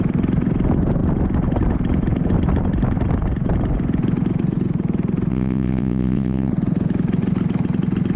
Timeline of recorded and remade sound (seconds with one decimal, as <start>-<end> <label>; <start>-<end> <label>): 0.0-5.3 recorded; 5.3-6.5 remade; 6.5-8.2 recorded